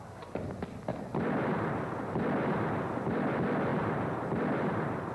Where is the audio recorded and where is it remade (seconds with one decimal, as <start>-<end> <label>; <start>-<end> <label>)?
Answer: 0.0-5.1 recorded